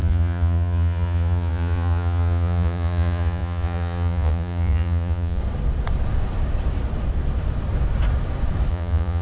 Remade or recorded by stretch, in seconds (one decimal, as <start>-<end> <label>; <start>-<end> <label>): 0.0-5.4 remade; 5.4-8.7 recorded; 8.7-9.2 remade